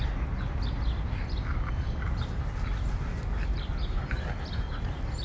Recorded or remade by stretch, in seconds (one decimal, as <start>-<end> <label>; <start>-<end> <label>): 0.0-1.5 recorded; 1.5-3.7 remade; 3.7-5.2 recorded